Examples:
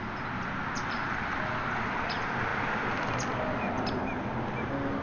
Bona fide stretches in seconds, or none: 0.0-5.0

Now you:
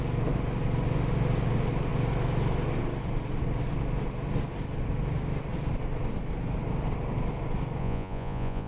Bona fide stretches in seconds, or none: 0.0-7.8

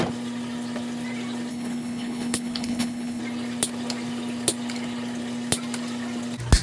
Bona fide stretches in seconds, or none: 0.0-1.5; 3.2-6.6

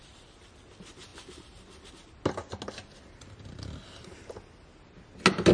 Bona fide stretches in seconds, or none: 0.0-5.5